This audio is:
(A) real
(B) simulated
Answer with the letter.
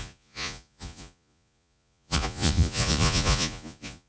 B